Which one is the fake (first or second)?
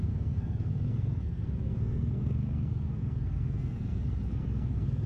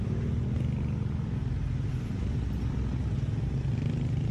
first